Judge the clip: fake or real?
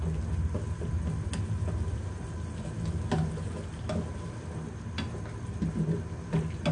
real